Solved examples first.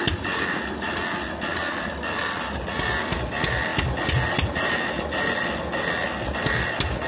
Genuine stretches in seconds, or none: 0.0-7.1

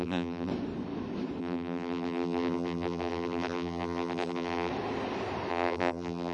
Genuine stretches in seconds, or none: 0.5-1.4; 4.7-5.5

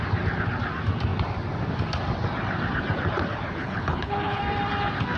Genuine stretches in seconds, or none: 0.0-3.6; 4.4-5.2